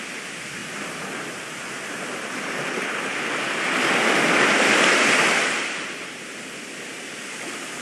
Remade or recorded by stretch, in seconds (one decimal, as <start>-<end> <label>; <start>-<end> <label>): 0.0-0.6 recorded; 0.6-2.2 remade; 2.2-7.8 recorded